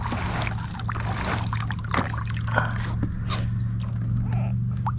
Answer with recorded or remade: recorded